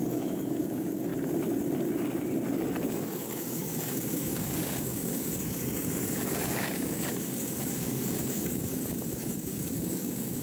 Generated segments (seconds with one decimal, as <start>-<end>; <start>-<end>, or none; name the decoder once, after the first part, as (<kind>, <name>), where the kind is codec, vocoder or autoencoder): 0.0-1.1 (codec, DAC); 2.9-10.4